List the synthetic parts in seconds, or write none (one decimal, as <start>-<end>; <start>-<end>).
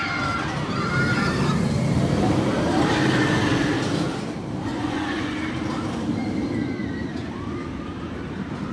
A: 4.7-5.4